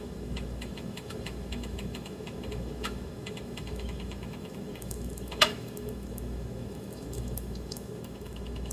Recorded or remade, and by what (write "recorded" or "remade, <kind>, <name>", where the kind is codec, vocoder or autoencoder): remade, autoencoder, DAC-VAE